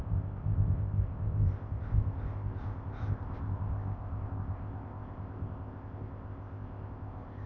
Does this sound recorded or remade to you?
remade